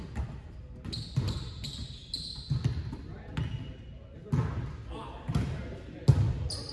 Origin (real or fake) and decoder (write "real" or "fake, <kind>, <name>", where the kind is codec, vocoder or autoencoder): real